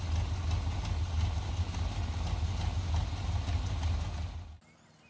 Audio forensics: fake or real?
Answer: real